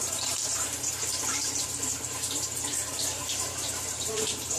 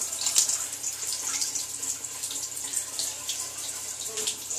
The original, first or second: second